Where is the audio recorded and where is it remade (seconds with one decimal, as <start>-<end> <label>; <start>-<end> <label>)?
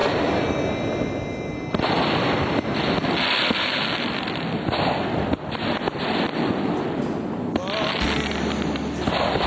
0.0-9.5 recorded